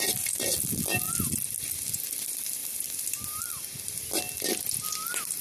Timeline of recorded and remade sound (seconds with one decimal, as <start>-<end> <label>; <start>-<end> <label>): 0.0-5.4 recorded

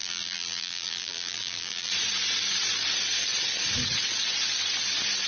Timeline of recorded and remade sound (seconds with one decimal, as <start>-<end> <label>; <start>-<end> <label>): 0.0-1.9 remade; 1.9-5.3 recorded

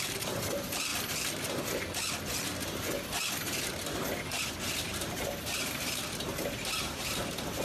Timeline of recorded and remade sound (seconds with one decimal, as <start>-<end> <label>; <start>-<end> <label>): 0.0-0.9 remade; 0.9-4.4 recorded; 4.4-7.6 remade

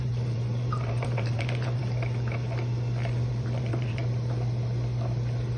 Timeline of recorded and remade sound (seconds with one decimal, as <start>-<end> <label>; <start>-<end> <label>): 0.0-1.8 remade; 1.8-3.3 recorded; 3.3-4.0 remade; 4.0-5.6 recorded

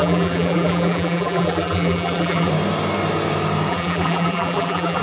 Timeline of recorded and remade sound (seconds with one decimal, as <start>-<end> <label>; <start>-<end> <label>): 0.0-2.5 remade; 2.5-3.7 recorded; 3.7-5.0 remade

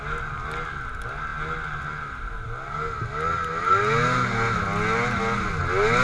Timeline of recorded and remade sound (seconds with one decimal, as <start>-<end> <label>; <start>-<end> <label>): 0.0-6.0 recorded

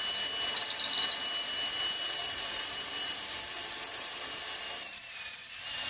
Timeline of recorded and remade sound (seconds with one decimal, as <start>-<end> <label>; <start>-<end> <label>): 0.0-2.2 recorded; 2.2-5.9 remade